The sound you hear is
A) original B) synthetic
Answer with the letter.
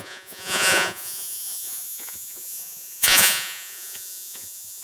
B